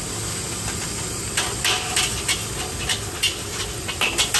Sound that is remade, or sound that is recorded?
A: recorded